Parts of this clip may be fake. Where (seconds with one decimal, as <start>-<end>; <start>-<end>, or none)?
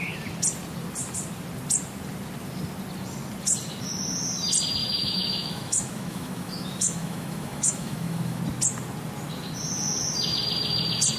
4.8-8.4